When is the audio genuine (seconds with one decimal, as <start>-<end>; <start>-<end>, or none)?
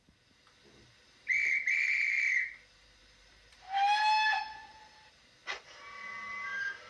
0.0-3.0; 5.1-6.9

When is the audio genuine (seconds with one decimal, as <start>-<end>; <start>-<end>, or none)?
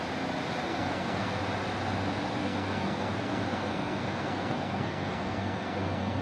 0.0-0.6; 1.4-2.4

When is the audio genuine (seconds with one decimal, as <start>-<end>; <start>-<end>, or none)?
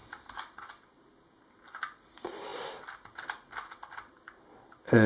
0.0-5.1